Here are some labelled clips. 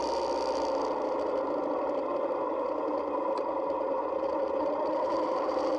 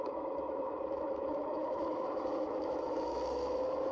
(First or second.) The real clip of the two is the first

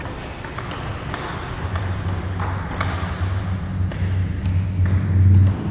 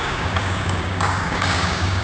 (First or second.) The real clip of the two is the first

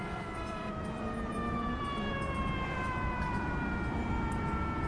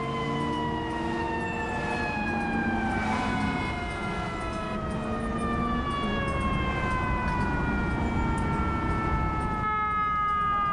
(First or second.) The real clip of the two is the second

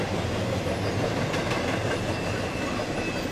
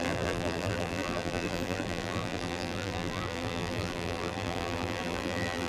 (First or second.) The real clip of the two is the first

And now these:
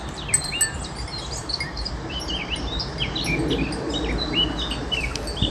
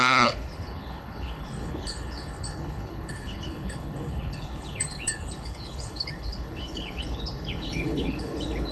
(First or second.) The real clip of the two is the first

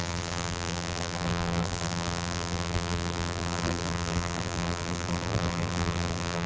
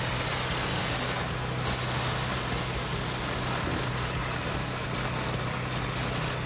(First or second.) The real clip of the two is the second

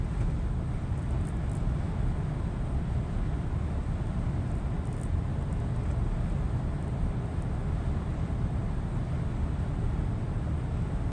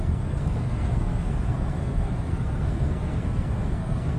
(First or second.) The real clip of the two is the first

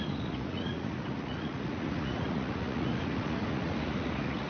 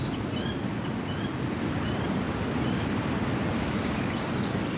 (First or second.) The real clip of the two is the second